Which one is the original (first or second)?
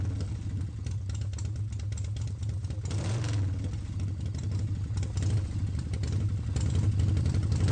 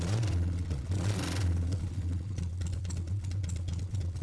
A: first